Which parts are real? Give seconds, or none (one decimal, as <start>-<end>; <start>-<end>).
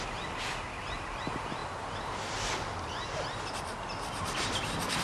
0.0-5.0